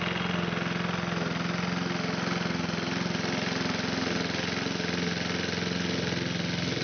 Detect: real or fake real